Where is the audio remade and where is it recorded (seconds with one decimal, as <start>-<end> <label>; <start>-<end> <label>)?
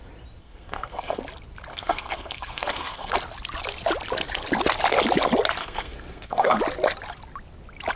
0.0-0.4 recorded; 0.4-1.2 remade; 1.2-1.7 recorded; 1.7-3.1 remade; 3.1-5.6 recorded; 5.6-6.6 remade; 6.6-8.0 recorded